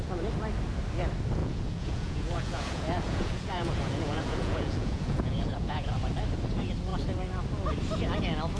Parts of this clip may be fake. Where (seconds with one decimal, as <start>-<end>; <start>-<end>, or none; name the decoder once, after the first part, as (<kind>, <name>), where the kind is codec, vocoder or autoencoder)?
1.4-5.9 (vocoder, Vocos)